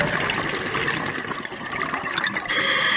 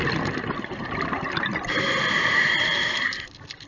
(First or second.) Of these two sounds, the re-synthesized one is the second